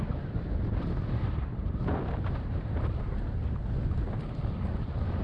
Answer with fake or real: real